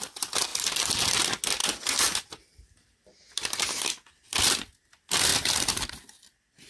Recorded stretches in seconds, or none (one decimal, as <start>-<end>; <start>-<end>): 0.0-1.6; 3.2-5.3; 5.9-6.7